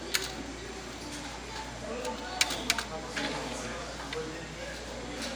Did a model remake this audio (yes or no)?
no